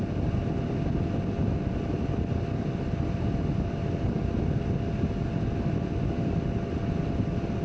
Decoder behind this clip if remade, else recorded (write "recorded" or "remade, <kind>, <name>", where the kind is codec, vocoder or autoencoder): recorded